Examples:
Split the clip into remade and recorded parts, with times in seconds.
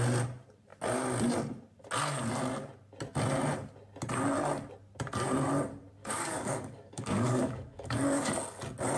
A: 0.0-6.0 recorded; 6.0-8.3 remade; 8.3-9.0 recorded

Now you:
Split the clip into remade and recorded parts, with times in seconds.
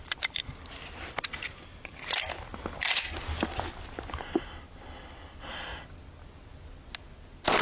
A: 0.0-2.5 remade; 2.5-3.8 recorded; 3.8-5.7 remade; 5.7-7.6 recorded